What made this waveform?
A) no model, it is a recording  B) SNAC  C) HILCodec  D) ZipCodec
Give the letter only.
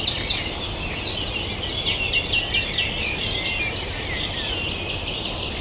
A